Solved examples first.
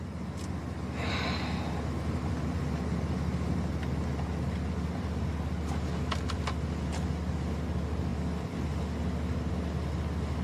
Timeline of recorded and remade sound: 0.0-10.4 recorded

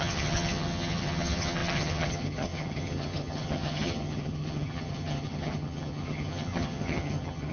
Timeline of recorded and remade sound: 0.0-7.5 remade

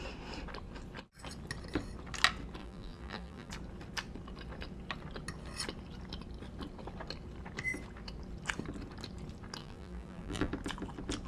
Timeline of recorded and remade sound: 0.0-2.6 recorded; 2.6-3.5 remade; 3.5-9.6 recorded; 9.6-10.5 remade; 10.5-11.3 recorded

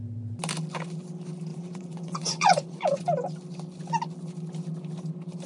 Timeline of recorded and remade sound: 0.0-1.5 recorded; 1.5-3.0 remade; 3.0-5.5 recorded

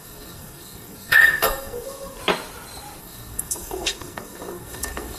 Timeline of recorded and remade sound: 0.0-2.2 remade; 2.2-3.0 recorded; 3.0-5.2 remade

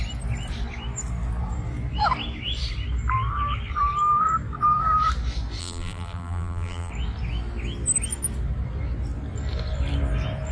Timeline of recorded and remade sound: 0.0-5.6 recorded; 5.6-6.9 remade; 6.9-10.5 recorded

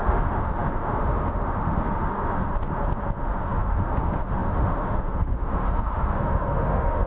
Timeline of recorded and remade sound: 0.0-2.5 remade; 2.5-3.2 recorded; 3.2-7.1 remade

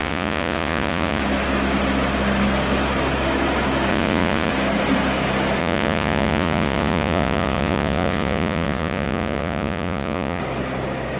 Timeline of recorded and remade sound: 0.0-1.2 remade; 1.2-3.9 recorded; 3.9-4.5 remade; 4.5-5.6 recorded; 5.6-10.4 remade; 10.4-11.2 recorded